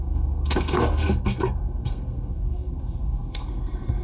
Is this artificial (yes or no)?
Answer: yes